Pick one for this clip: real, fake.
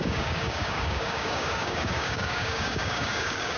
fake